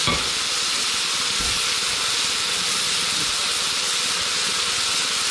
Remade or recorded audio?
recorded